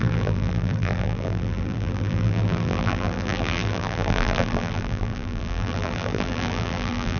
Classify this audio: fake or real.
fake